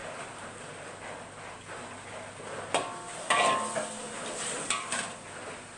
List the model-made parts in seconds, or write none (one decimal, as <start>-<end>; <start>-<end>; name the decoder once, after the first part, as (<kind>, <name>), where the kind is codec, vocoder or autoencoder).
none